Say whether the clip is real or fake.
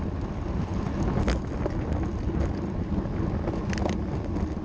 real